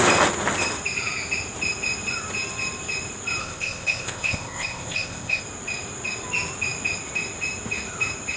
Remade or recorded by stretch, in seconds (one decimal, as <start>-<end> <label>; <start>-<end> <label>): 0.0-3.4 recorded; 3.4-5.4 remade; 5.4-8.4 recorded